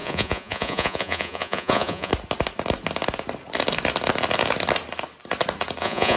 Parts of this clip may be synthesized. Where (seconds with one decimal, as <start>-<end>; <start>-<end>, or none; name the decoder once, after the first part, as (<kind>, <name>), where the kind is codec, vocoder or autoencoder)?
0.0-2.1 (vocoder, Vocos); 5.8-6.2